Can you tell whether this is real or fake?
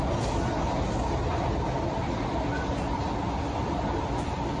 real